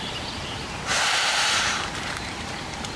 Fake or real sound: fake